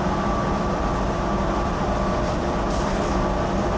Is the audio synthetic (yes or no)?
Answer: no